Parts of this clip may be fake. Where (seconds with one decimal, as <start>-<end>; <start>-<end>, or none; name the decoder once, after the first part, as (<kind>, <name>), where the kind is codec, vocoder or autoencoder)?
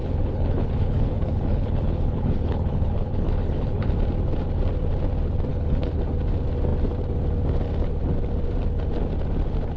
0.0-3.9 (codec, HILCodec); 5.5-6.0